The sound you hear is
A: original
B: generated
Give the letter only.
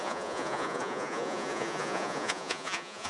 B